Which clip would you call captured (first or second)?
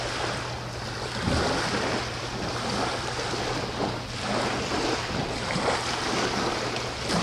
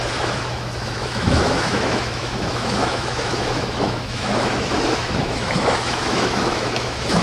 first